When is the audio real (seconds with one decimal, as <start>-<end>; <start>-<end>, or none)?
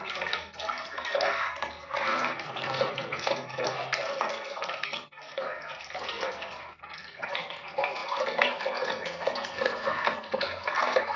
none